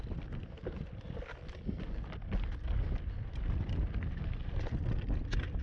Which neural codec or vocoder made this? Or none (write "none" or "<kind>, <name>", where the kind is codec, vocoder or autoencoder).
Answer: none